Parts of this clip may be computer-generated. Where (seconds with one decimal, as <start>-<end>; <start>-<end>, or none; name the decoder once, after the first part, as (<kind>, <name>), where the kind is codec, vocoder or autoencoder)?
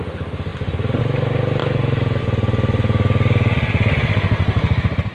1.6-2.2 (autoencoder, DAC-VAE)